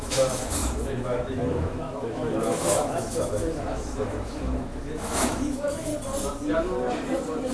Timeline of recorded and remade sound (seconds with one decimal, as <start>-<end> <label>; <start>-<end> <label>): 0.0-5.9 remade; 5.9-7.5 recorded